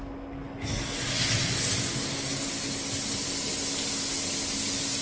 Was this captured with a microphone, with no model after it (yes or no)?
yes